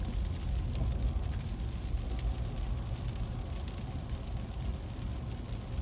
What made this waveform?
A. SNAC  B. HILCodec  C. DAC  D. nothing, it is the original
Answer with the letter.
D